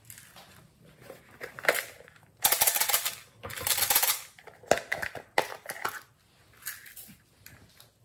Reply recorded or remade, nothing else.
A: recorded